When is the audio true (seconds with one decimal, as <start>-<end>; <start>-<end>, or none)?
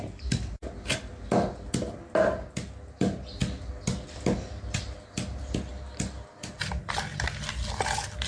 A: 0.0-8.3